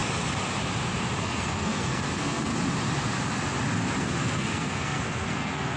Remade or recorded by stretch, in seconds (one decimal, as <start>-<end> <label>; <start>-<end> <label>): 0.0-1.2 recorded; 1.2-2.5 remade; 2.5-4.0 recorded; 4.0-5.8 remade